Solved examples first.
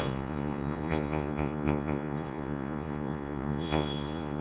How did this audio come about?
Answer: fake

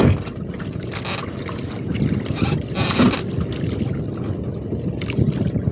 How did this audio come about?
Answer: real